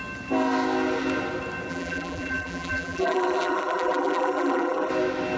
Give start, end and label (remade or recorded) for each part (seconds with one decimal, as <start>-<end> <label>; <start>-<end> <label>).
0.0-1.7 recorded; 1.7-4.9 remade; 4.9-5.4 recorded

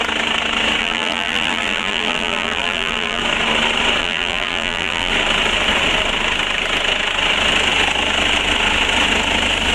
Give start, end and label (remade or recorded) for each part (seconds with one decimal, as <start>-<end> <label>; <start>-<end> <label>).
0.0-0.8 recorded; 0.8-3.2 remade; 3.2-4.0 recorded; 4.0-5.1 remade; 5.1-9.7 recorded

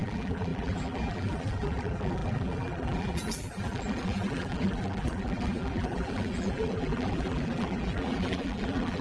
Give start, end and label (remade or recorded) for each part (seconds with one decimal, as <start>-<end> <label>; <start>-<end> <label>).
0.0-9.0 remade

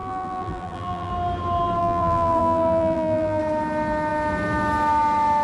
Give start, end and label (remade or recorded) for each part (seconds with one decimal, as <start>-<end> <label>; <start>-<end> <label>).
0.0-1.1 remade; 1.1-1.8 recorded; 1.8-3.4 remade; 3.4-5.4 recorded

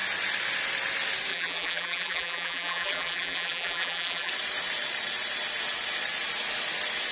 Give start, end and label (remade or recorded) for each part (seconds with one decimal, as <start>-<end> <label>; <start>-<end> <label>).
0.0-1.3 recorded; 1.3-4.3 remade; 4.3-7.1 recorded

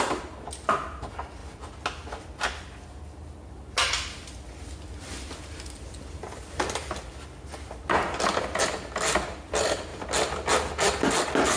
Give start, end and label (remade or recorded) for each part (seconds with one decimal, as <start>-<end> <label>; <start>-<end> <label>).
0.0-11.6 recorded

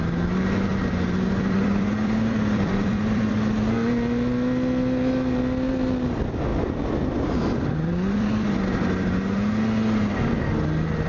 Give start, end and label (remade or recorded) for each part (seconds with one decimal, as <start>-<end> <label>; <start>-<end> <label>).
0.0-0.7 recorded; 0.7-3.3 remade; 3.3-6.5 recorded; 6.5-8.6 remade; 8.6-11.1 recorded

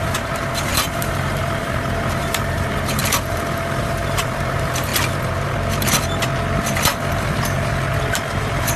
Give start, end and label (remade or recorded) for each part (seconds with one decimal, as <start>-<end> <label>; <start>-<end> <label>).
0.0-3.0 remade; 3.0-3.8 recorded; 3.8-4.9 remade; 4.9-8.4 recorded; 8.4-8.8 remade